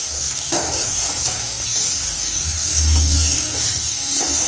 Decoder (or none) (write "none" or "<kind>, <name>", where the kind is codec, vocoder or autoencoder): codec, DAC